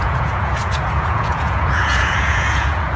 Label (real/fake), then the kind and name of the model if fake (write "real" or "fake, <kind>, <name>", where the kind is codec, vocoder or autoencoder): fake, vocoder, Vocos